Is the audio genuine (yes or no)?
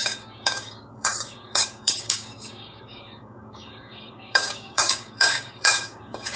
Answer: no